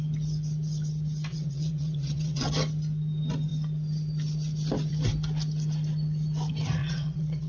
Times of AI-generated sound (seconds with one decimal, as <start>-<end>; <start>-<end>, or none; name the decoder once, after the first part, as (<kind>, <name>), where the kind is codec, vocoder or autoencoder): 1.3-2.5 (vocoder, WaveNeXt); 6.8-7.5